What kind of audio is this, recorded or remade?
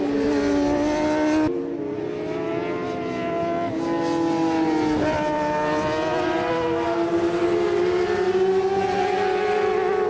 recorded